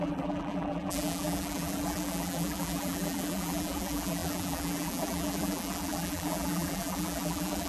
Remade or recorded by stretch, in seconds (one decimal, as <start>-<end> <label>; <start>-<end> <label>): 0.0-7.7 remade